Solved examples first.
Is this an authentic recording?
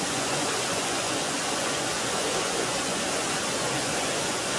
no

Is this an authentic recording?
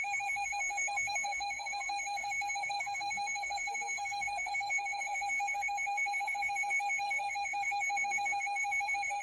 no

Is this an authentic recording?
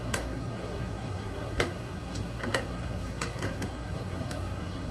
no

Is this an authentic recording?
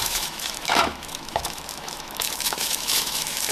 no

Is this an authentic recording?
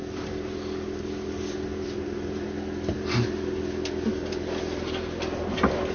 yes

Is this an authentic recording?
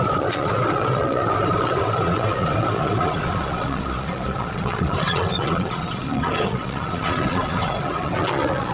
no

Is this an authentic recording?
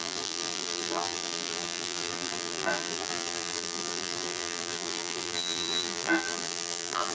no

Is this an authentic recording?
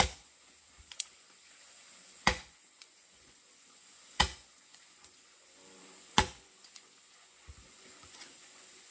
no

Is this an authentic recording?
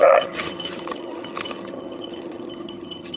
no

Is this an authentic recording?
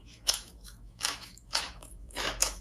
no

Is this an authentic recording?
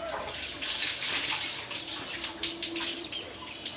yes